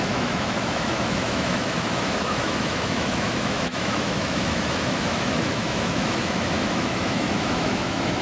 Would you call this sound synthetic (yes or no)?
yes